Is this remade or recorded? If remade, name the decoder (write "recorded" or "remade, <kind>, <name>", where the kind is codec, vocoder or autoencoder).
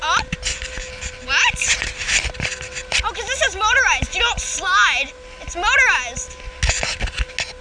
recorded